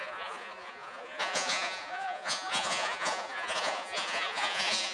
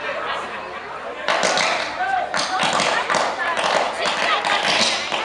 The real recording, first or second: second